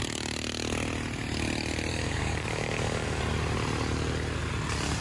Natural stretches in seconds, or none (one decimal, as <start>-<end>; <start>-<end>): 0.0-1.9; 3.2-5.0